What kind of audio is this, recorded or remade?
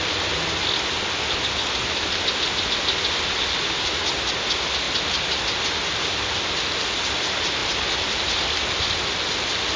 recorded